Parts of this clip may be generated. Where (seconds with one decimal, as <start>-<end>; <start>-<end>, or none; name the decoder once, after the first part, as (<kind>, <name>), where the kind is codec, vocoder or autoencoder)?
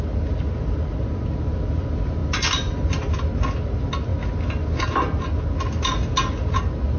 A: 2.2-3.1 (vocoder, BigVGAN v2); 4.1-4.7